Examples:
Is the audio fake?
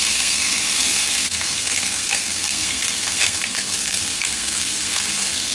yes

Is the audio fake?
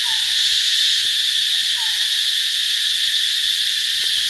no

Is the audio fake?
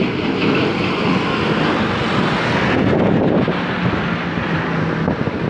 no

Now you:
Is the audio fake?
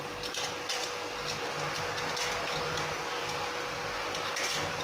no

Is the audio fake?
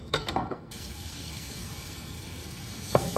yes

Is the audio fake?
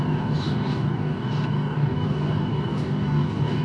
yes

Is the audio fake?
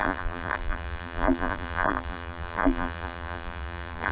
yes